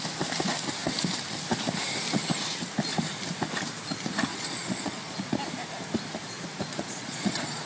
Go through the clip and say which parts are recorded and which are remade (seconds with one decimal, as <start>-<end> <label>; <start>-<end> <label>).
0.0-4.3 recorded; 4.3-5.3 remade; 5.3-6.7 recorded; 6.7-7.7 remade